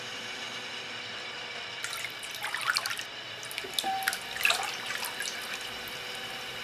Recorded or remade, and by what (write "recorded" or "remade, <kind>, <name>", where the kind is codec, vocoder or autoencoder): recorded